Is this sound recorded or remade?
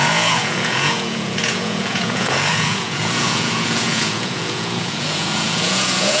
remade